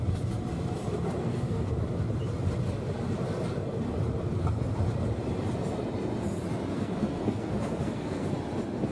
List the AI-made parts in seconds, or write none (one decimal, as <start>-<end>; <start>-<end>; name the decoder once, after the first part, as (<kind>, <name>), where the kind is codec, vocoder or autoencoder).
1.2-1.7 (codec, SNAC); 6.7-8.3